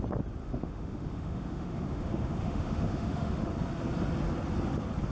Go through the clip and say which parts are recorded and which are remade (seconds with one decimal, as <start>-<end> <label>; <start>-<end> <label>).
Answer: 0.0-0.4 recorded; 0.4-3.5 remade; 3.5-5.1 recorded